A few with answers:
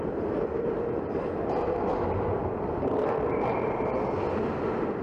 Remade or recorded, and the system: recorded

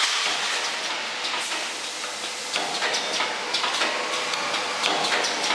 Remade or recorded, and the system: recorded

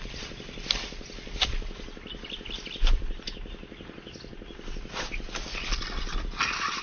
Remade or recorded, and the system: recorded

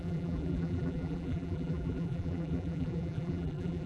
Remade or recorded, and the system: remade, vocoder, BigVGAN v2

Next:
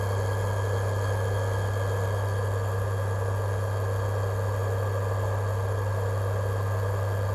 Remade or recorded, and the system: recorded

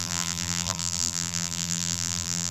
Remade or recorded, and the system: remade, vocoder, BigVGAN v2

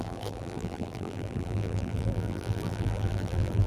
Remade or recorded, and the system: remade, vocoder, BigVGAN v2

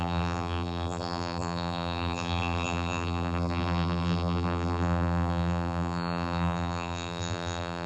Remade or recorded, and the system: remade, vocoder, BigVGAN v2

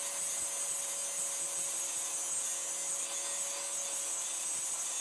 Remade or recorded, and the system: recorded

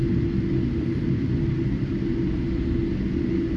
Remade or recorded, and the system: recorded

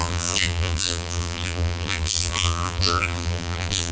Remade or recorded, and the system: remade, vocoder, BigVGAN v2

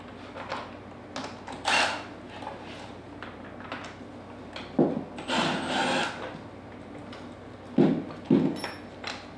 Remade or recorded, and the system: recorded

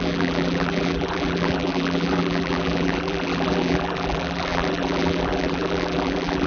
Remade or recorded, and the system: remade, vocoder, BigVGAN v2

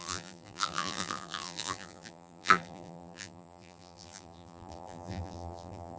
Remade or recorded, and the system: remade, vocoder, BigVGAN v2